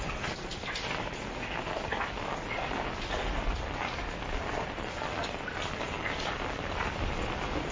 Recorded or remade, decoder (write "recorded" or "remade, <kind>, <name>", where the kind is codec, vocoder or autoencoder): recorded